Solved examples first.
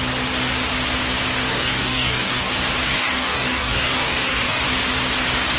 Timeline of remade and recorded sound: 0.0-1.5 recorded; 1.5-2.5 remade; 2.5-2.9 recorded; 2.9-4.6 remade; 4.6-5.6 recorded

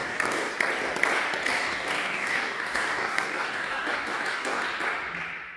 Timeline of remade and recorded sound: 0.0-0.5 remade; 0.5-1.5 recorded; 1.5-4.6 remade; 4.6-5.6 recorded

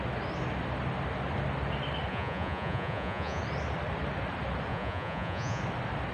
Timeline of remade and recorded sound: 0.0-2.1 recorded; 2.1-3.4 remade; 3.4-4.7 recorded; 4.7-5.6 remade; 5.6-6.1 recorded

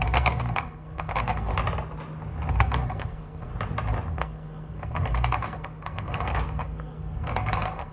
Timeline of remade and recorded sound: 0.0-1.5 remade; 1.5-2.5 recorded; 2.5-3.5 remade; 3.5-4.1 recorded; 4.1-7.9 remade